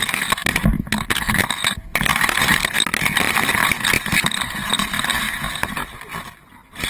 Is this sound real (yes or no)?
yes